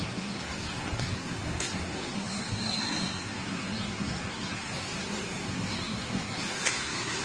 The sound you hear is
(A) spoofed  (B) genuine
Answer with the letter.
A